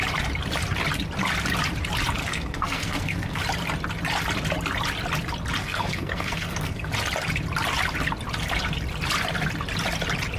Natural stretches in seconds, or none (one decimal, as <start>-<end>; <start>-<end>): 0.0-2.2; 3.4-5.6; 6.9-10.4